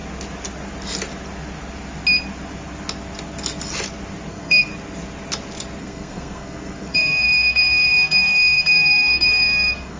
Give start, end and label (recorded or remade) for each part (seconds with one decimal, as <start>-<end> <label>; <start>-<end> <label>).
0.0-4.3 recorded; 4.3-4.7 remade; 4.7-5.8 recorded; 5.8-10.0 remade

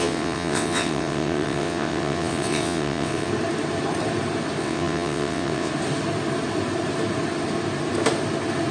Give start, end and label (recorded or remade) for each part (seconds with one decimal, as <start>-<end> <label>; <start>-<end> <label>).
0.0-3.3 remade; 3.3-4.6 recorded; 4.6-5.7 remade; 5.7-8.7 recorded